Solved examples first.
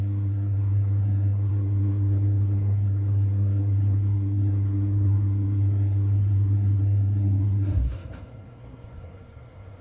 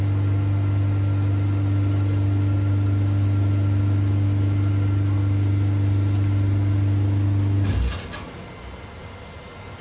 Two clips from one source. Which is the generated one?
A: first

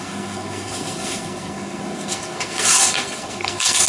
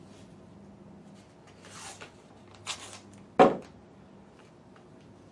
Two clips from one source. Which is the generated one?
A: first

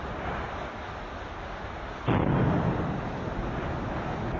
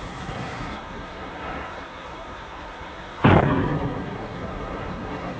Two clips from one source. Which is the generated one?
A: second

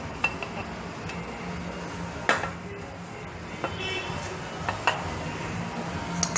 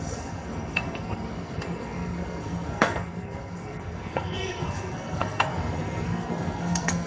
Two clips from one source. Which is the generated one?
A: second